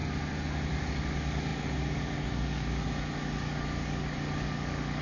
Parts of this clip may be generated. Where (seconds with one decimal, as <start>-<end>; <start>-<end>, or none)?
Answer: 0.7-5.0